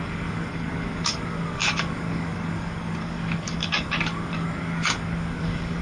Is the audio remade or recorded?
remade